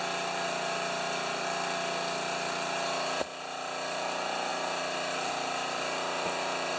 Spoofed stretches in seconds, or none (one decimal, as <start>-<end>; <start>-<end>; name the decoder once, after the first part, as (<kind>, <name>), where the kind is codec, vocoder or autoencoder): none